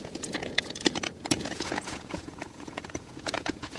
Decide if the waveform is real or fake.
fake